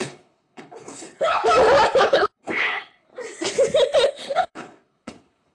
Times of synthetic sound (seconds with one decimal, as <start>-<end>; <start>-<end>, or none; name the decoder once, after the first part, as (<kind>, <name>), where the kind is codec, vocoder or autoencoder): 0.0-1.4 (codec, HILCodec); 2.0-3.1; 4.1-5.5